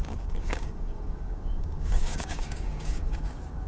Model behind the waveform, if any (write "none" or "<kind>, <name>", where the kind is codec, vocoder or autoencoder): codec, DAC